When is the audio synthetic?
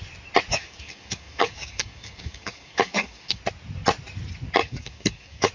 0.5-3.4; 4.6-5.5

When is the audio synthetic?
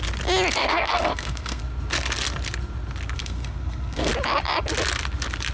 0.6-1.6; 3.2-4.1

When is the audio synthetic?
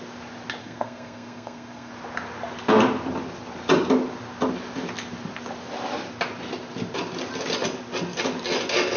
0.6-1.9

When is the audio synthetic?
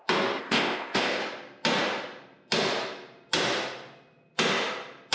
0.4-1.2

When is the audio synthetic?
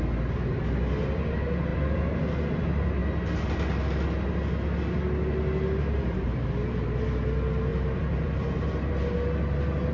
1.7-2.2; 7.7-8.9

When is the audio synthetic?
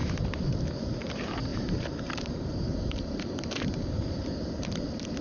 1.5-4.3